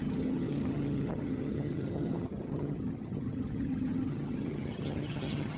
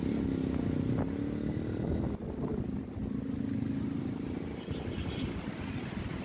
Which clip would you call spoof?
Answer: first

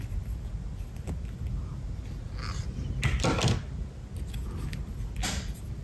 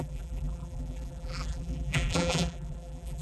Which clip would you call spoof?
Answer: second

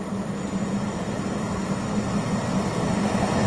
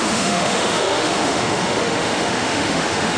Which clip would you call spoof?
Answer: second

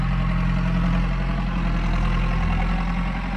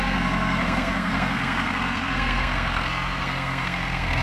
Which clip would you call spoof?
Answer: second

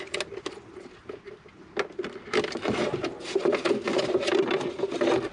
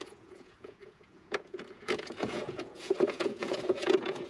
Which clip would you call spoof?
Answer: second